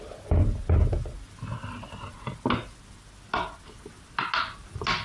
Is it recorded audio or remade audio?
recorded